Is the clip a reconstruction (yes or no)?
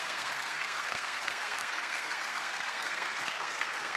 yes